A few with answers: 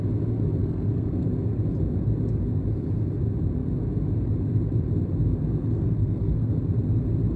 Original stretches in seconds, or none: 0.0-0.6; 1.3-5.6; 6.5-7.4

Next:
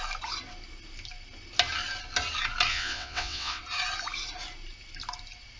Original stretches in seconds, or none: 0.0-2.7; 3.6-5.6

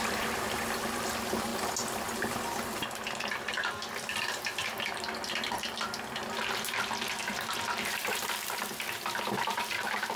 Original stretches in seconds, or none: 1.5-2.3

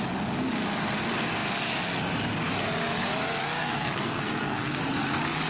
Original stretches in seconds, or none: 0.0-3.6; 4.8-5.5